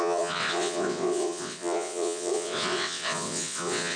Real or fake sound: fake